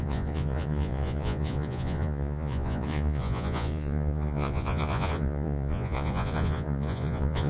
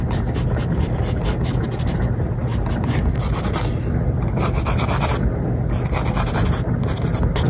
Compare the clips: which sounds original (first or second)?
second